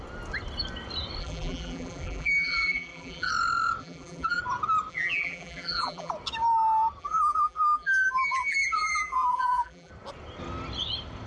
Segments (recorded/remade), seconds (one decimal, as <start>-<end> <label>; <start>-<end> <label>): 0.0-1.2 recorded; 1.2-3.3 remade; 3.3-3.8 recorded; 3.8-4.4 remade; 4.4-4.9 recorded; 4.9-6.1 remade; 6.1-7.0 recorded; 7.0-9.9 remade; 9.9-11.3 recorded